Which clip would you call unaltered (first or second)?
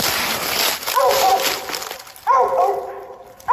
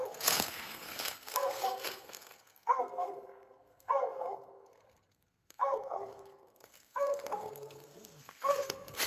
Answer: first